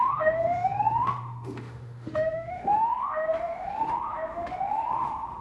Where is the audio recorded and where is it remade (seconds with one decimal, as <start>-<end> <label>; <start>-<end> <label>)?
0.0-5.4 remade